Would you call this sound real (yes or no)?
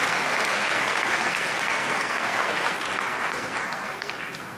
no